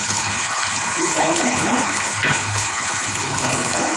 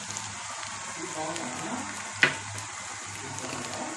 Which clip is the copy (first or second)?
first